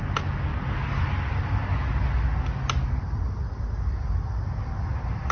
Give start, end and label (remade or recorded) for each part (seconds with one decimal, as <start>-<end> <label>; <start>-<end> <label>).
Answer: 0.0-5.3 recorded